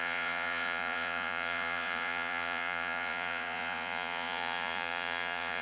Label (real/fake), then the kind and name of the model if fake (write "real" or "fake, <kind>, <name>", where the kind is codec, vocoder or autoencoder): fake, vocoder, Vocos